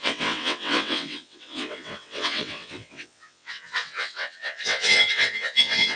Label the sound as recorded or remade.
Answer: remade